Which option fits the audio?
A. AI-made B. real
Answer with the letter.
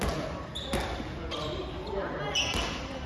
B